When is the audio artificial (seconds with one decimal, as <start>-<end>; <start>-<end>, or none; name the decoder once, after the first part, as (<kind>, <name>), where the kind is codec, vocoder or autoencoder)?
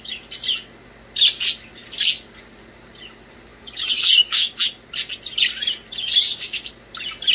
3.5-4.6 (autoencoder, DAC-VAE)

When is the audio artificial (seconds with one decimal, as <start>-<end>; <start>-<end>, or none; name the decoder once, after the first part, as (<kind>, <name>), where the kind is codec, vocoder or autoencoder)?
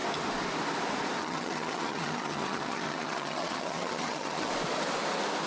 1.2-4.5 (vocoder, HiFi-GAN)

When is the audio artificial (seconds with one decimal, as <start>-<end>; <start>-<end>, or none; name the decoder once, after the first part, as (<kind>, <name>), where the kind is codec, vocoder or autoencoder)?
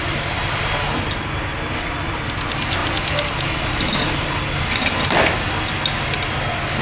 none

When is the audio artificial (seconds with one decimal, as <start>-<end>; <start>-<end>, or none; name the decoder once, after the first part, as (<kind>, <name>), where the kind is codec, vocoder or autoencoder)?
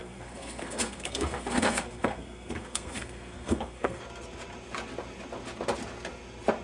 0.0-4.0 (codec, SNAC)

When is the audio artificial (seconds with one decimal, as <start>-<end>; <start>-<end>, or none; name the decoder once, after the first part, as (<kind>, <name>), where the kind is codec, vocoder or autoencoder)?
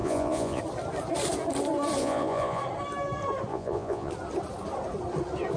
0.0-0.6 (vocoder, Vocos); 2.0-2.6; 3.5-4.1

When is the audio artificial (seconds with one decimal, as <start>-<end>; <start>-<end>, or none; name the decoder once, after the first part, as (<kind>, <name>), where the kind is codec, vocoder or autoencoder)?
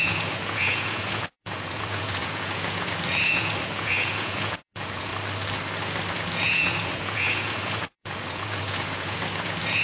0.0-5.1 (vocoder, Vocos); 6.1-9.8